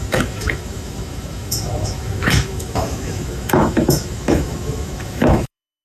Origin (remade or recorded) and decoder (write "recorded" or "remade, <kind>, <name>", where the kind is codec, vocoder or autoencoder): remade, autoencoder, DAC-VAE